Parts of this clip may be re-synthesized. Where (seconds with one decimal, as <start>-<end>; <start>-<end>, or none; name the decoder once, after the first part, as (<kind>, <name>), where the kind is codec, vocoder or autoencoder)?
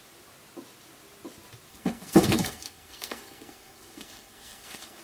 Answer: 1.7-5.0 (codec, SNAC)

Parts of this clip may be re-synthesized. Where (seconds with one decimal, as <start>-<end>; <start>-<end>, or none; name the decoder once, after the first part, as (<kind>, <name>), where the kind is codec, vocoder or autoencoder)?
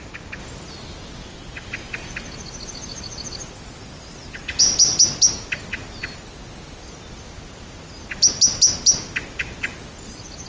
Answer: none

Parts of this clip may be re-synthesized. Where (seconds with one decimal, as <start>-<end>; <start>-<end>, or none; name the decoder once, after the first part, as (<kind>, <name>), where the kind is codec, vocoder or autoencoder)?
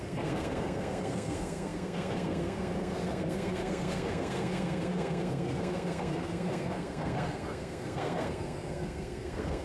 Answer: 0.0-9.6 (codec, SNAC)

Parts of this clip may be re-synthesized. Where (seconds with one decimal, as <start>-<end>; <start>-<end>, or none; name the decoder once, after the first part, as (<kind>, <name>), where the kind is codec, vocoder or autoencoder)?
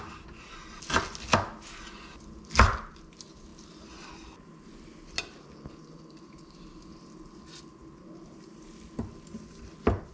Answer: 7.8-8.4 (vocoder, BigVGAN v2)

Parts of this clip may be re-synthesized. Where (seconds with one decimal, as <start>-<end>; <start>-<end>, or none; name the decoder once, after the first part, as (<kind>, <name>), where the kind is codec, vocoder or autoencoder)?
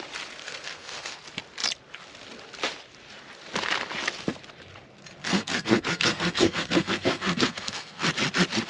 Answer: 0.4-1.2 (codec, SNAC); 5.2-8.1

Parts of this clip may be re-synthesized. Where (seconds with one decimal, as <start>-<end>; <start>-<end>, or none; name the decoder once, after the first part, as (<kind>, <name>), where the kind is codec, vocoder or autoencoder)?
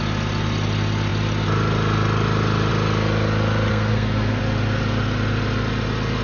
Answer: 3.7-4.4 (codec, SNAC)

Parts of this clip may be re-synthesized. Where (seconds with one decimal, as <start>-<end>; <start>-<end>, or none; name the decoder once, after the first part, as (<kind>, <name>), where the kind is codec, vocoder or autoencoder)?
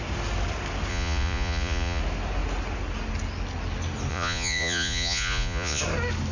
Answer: 0.9-2.0 (vocoder, Vocos); 4.1-5.8